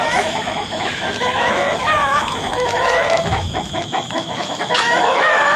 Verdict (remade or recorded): remade